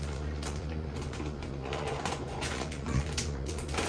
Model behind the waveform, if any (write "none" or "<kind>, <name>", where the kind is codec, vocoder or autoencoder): vocoder, Vocos